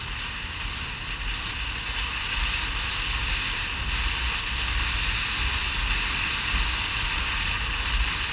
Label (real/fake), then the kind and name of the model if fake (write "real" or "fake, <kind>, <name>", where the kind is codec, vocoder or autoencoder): real